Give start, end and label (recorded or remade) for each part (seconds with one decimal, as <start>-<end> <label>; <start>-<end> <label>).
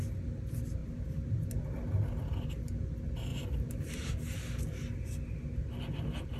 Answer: 0.0-0.8 recorded; 0.8-1.3 remade; 1.3-3.3 recorded; 3.3-4.1 remade; 4.1-6.4 recorded